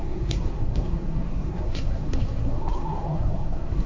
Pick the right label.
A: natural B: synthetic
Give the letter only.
B